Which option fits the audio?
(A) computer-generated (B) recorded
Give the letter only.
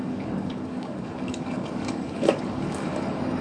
A